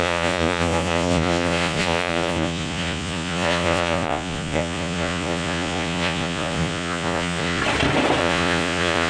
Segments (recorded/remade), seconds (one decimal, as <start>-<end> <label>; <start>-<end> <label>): 0.0-7.6 remade; 7.6-8.2 recorded; 8.2-9.1 remade